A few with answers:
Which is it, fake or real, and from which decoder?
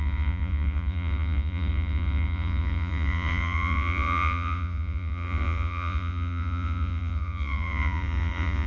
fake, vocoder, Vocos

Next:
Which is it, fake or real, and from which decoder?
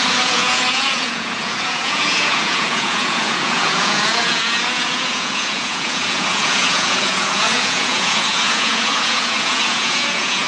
fake, vocoder, Vocos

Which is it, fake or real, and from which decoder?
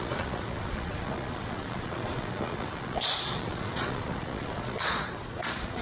fake, vocoder, Vocos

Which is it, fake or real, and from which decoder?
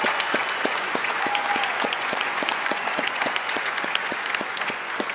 fake, vocoder, Vocos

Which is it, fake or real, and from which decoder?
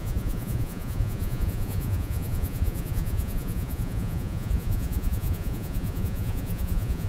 fake, vocoder, Vocos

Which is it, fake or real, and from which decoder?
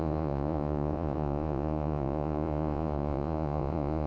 fake, vocoder, Vocos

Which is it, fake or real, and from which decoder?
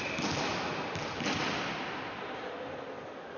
real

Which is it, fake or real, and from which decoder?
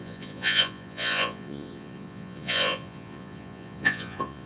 fake, vocoder, Vocos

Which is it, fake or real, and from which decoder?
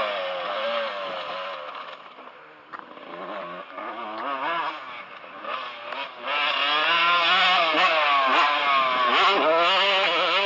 real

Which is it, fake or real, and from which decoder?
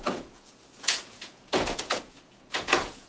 fake, vocoder, Vocos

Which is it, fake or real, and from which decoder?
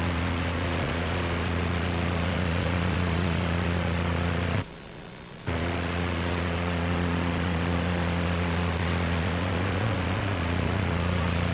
fake, vocoder, Vocos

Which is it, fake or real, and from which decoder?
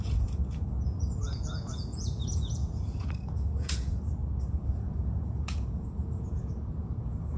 fake, vocoder, Vocos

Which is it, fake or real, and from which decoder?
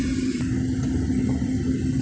real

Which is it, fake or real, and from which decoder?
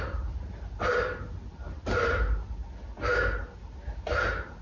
real